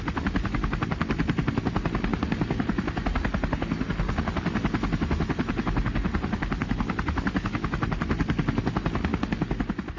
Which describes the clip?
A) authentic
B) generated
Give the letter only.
A